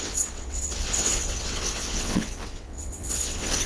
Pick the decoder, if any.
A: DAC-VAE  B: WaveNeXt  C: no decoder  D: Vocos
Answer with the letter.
B